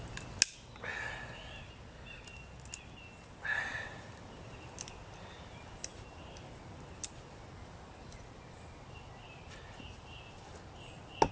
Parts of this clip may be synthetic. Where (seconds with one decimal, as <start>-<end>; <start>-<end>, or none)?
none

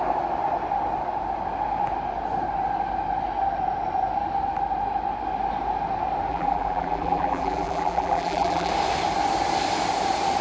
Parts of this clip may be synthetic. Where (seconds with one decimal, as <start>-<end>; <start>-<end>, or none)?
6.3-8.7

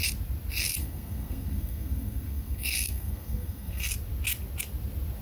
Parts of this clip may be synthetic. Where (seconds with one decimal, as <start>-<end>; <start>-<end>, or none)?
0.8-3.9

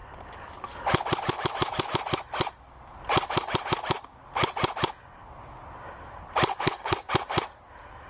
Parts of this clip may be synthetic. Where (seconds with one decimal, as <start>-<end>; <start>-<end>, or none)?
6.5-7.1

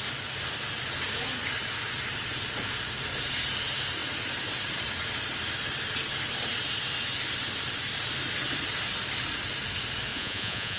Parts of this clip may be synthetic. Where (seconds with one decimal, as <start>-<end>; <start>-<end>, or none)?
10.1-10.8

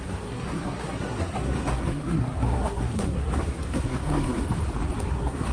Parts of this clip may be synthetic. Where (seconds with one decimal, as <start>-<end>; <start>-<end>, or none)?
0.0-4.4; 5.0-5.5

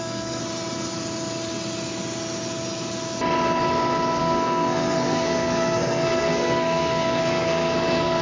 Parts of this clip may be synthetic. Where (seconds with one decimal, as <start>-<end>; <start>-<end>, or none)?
0.0-0.4; 4.2-8.2

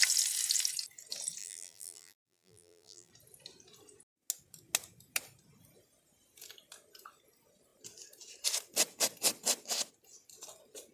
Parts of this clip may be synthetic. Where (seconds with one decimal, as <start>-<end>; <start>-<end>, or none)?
1.4-3.1